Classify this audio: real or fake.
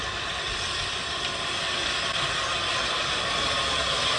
real